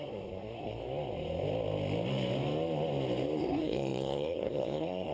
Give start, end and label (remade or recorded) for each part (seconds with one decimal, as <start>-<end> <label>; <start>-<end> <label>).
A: 0.0-0.8 remade; 0.8-3.4 recorded; 3.4-5.1 remade